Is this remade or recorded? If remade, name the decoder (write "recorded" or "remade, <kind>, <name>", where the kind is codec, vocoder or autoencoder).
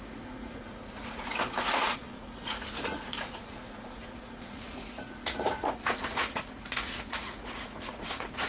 remade, vocoder, Vocos